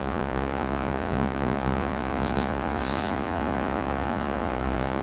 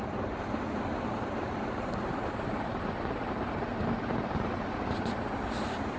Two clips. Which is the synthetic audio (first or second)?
first